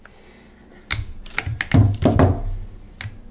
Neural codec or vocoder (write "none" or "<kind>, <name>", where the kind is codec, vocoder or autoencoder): none